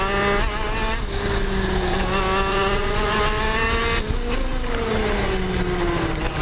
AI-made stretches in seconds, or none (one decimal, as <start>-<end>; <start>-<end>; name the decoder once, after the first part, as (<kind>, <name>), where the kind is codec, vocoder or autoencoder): 2.5-3.2 (vocoder, Vocos)